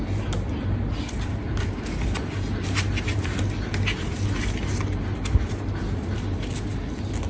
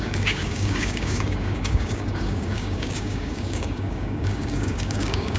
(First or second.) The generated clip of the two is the second